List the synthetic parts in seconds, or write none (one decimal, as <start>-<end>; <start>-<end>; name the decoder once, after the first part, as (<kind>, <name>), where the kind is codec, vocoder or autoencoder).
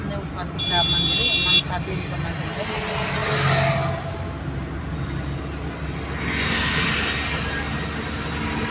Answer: none